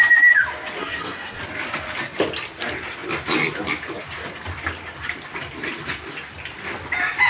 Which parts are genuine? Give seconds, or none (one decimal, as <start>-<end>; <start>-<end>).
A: 0.0-0.8; 1.4-7.3